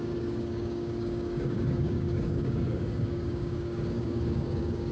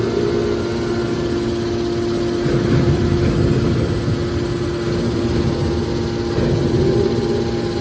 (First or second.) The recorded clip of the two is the second